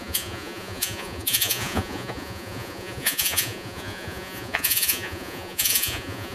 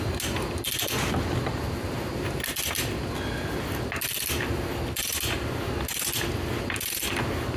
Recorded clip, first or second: second